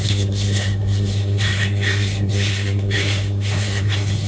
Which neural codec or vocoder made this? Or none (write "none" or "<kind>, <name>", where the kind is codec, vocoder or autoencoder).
codec, SNAC